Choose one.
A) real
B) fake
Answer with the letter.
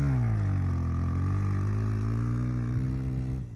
A